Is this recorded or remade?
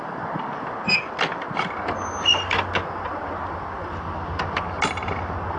recorded